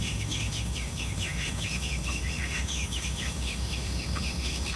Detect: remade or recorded remade